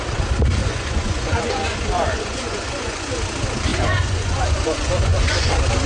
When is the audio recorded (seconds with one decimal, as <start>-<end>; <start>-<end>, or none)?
0.0-0.6; 3.1-3.7; 5.5-5.9